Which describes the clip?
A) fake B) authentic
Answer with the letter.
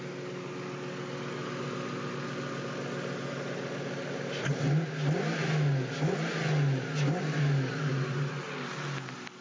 B